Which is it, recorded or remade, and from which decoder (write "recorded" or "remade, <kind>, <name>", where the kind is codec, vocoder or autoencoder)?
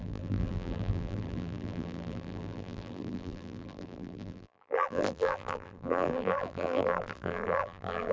remade, vocoder, BigVGAN v2